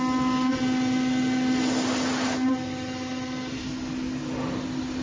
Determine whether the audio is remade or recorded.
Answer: recorded